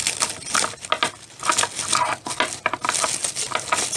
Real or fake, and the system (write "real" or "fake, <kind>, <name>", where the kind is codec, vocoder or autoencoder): real